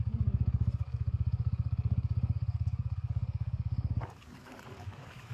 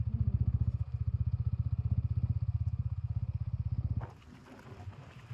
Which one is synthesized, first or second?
first